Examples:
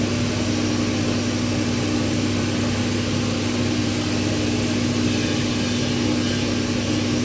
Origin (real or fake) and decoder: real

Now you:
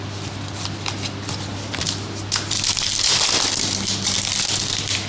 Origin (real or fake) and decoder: fake, vocoder, BigVGAN v2